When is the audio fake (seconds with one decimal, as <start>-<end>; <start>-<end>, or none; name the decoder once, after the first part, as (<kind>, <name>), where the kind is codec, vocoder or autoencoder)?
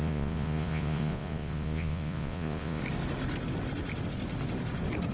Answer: 0.0-2.8 (vocoder, Vocos)